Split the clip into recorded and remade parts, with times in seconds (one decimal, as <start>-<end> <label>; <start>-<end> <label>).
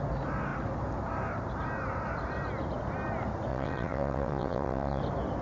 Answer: 0.0-3.5 recorded; 3.5-5.0 remade; 5.0-5.4 recorded